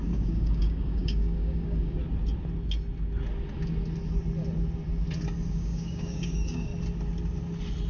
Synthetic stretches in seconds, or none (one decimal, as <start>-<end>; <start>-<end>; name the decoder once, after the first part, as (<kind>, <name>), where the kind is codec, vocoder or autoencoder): 0.0-2.0 (codec, DAC); 5.5-6.7